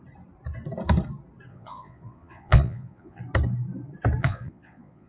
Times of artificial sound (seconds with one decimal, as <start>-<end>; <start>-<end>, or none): 1.5-3.2; 4.2-5.1

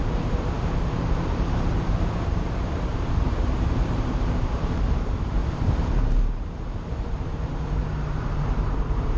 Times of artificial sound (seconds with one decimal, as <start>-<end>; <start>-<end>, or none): 0.0-5.4; 6.0-9.2

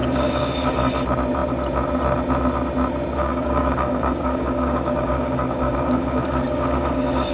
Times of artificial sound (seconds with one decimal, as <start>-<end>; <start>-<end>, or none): 0.0-0.7; 3.2-7.3

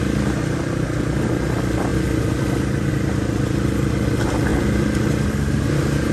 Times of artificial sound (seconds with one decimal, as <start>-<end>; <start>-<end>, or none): none

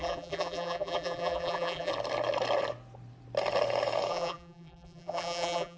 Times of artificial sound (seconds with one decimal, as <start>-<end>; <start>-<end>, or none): 0.0-1.9; 4.1-5.8